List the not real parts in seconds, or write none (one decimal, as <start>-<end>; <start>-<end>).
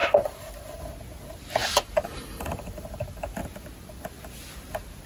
0.0-0.8; 1.6-3.4